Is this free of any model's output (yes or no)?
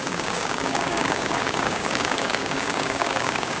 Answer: no